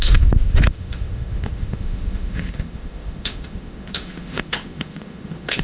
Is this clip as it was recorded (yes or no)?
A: no